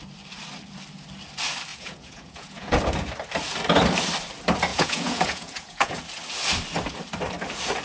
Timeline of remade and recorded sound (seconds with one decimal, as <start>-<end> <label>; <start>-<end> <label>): 0.0-1.7 recorded; 1.7-2.8 remade; 2.8-4.7 recorded; 4.7-6.0 remade; 6.0-7.8 recorded